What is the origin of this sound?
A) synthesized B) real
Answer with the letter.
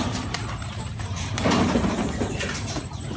B